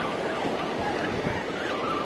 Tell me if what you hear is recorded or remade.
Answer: recorded